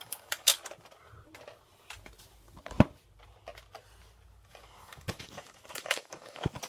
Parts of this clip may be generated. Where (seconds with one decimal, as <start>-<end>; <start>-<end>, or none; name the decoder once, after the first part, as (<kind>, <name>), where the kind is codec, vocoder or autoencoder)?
0.0-0.5 (codec, DAC); 4.5-6.7